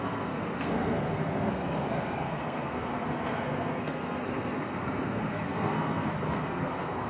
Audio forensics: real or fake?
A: fake